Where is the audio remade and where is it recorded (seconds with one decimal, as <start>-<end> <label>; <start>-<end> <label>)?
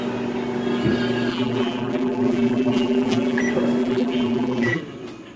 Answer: 0.0-1.3 recorded; 1.3-3.4 remade; 3.4-3.8 recorded; 3.8-4.8 remade; 4.8-5.4 recorded